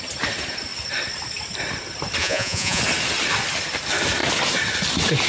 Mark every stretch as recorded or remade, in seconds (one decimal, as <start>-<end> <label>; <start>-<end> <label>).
0.0-2.2 recorded; 2.2-2.8 remade; 2.8-5.3 recorded